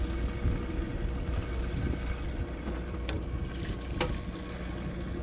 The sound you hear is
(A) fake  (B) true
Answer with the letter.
B